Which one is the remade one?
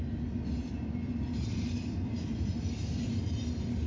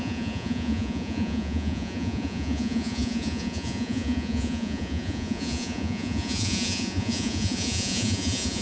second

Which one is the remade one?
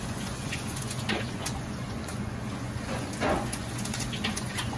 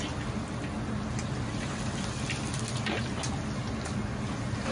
first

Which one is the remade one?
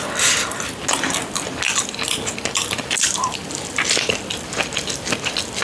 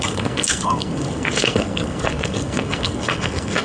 second